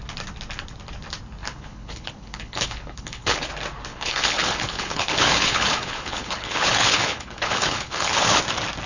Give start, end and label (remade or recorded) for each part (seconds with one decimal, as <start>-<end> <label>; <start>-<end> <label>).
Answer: 0.0-1.4 recorded; 1.4-3.5 remade; 3.5-3.9 recorded; 3.9-8.4 remade; 8.4-8.9 recorded

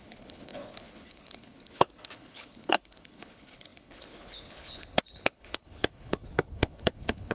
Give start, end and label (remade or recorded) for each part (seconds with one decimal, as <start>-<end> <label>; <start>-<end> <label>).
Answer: 0.0-7.3 remade

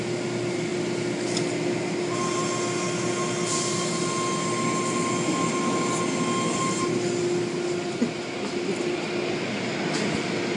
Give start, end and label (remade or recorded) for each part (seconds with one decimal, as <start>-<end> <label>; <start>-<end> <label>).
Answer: 0.0-10.6 recorded